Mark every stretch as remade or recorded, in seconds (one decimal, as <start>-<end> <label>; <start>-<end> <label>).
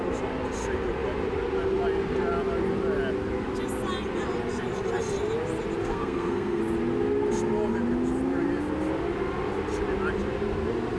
0.0-5.8 recorded; 5.8-6.6 remade; 6.6-11.0 recorded